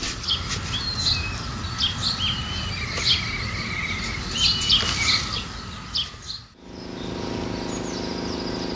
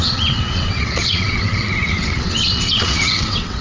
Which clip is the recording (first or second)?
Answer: first